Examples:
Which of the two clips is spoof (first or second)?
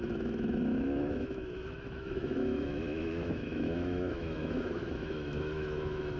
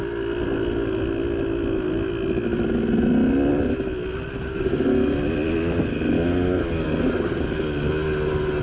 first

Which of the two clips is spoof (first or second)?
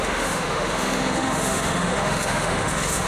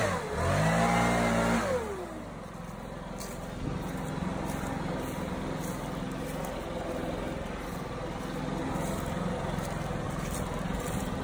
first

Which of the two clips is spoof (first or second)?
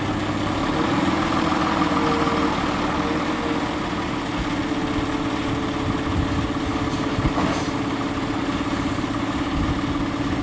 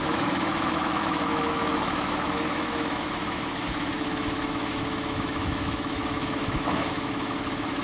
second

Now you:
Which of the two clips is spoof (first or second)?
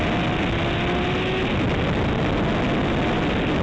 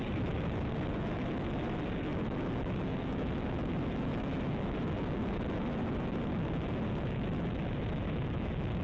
second